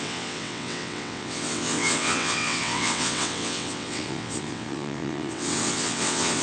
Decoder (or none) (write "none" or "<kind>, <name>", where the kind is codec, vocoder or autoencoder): vocoder, WaveNeXt